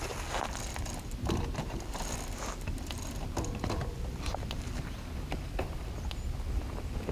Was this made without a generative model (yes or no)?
yes